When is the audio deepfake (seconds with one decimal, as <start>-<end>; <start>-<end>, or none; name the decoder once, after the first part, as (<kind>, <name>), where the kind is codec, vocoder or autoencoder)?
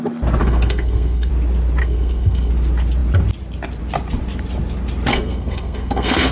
0.4-1.3 (codec, SNAC); 1.8-2.5; 5.1-6.3